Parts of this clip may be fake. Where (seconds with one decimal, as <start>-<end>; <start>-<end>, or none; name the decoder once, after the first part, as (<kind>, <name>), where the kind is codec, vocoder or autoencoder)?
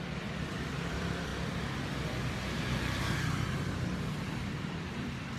0.0-1.3 (vocoder, BigVGAN v2); 4.5-5.4